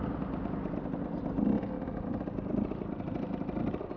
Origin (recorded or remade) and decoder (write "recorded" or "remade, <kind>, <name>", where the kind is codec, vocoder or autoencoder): recorded